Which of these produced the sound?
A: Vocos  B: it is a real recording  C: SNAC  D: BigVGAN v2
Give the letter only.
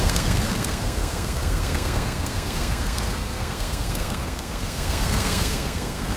C